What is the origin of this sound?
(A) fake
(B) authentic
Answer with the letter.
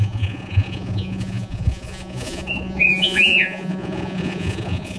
A